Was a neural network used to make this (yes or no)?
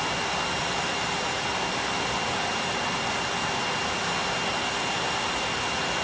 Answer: no